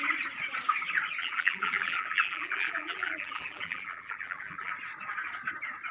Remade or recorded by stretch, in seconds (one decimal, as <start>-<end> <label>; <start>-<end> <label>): 0.0-1.2 recorded; 1.2-4.7 remade; 4.7-5.9 recorded